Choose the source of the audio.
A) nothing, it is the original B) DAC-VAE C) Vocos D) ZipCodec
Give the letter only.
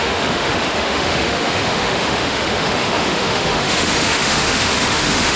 B